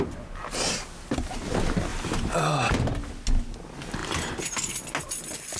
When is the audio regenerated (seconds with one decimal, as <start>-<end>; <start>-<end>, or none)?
1.9-2.7